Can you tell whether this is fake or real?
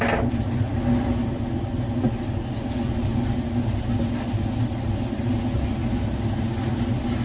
real